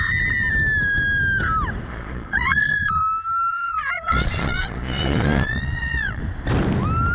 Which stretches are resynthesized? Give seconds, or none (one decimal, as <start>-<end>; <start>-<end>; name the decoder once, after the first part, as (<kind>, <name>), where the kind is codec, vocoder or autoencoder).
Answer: 1.9-3.0 (vocoder, Vocos); 3.5-6.2